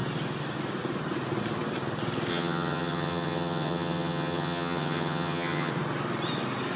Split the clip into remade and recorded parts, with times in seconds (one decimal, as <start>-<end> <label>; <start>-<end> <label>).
0.0-2.3 recorded; 2.3-5.7 remade; 5.7-6.8 recorded